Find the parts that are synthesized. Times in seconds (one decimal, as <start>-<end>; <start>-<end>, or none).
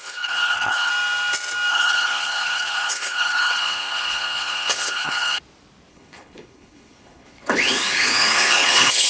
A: 0.0-0.9; 1.7-5.4; 5.9-9.1